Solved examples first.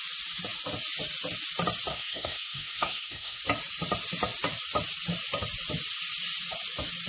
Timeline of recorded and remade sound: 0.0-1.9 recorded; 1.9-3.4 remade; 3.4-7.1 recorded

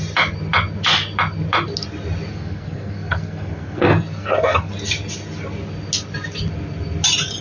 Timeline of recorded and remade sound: 0.0-2.3 recorded; 2.3-4.7 remade; 4.7-7.4 recorded

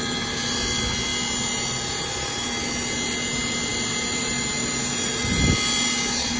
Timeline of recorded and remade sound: 0.0-6.4 recorded

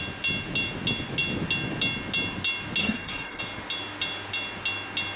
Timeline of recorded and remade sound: 0.0-2.8 recorded; 2.8-3.4 remade; 3.4-5.2 recorded

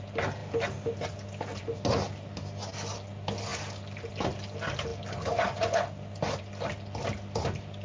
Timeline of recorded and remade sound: 0.0-7.8 recorded